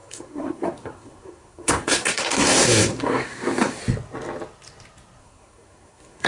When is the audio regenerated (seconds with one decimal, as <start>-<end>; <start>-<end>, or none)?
0.0-3.8; 5.2-6.3